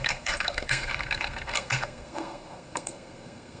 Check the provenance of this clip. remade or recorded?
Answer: remade